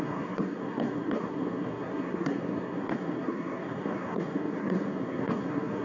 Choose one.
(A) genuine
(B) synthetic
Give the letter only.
B